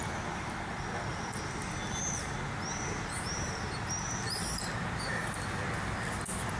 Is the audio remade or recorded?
recorded